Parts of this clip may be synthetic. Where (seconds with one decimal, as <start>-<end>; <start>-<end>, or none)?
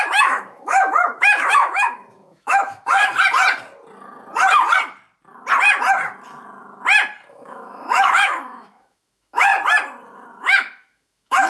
0.0-3.1; 7.3-9.5; 10.4-11.5